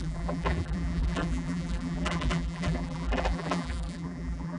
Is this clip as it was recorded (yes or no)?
no